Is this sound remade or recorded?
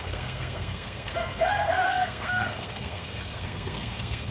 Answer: remade